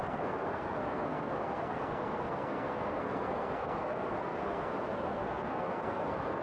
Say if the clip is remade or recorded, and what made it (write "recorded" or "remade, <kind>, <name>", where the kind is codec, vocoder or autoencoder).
remade, codec, SNAC